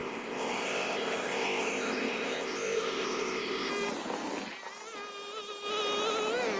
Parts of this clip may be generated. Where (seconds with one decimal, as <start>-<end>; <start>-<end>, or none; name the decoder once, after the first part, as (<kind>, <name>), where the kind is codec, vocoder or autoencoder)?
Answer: 0.0-3.7 (codec, ZipCodec)

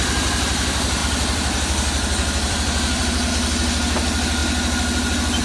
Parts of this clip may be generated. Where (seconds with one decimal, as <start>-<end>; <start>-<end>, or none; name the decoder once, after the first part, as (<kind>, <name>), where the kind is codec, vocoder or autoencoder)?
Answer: 1.0-3.3 (vocoder, BigVGAN v2)

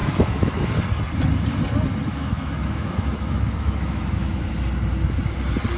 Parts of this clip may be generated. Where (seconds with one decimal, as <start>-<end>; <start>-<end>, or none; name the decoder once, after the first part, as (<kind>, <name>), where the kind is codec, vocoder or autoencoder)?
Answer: 0.0-0.8 (autoencoder, DAC-VAE); 2.1-4.5

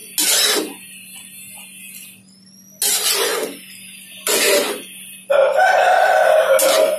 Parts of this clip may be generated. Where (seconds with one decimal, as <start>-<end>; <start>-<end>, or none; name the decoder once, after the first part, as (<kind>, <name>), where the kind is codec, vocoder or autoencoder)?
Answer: none

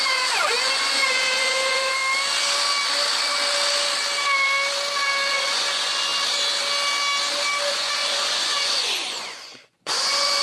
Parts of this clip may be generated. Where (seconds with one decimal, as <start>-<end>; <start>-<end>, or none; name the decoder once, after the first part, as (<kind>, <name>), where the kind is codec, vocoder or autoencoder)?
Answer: 0.0-2.0 (vocoder, Vocos); 5.3-6.1; 7.7-10.4

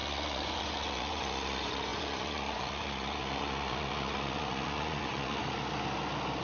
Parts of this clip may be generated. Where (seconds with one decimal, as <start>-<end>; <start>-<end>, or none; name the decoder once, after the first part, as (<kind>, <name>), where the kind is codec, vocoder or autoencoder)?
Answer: 0.0-5.4 (vocoder, Vocos)

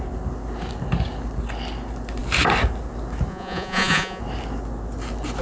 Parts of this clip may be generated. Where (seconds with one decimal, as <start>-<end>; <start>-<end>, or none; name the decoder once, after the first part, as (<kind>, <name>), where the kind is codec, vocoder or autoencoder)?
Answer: 3.3-4.2 (vocoder, Vocos)

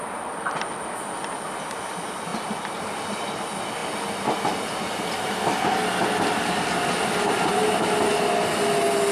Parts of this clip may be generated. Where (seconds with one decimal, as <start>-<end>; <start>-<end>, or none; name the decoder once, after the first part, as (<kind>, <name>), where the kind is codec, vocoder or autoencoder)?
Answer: 2.3-3.0 (vocoder, BigVGAN v2)